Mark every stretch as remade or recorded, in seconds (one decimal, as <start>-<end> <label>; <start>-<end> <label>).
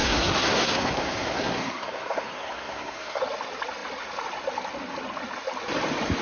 0.0-3.2 remade; 3.2-6.2 recorded